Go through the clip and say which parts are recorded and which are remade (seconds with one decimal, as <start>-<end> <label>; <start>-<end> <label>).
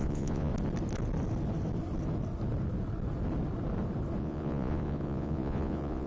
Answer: 0.0-0.5 remade; 0.5-4.2 recorded; 4.2-6.1 remade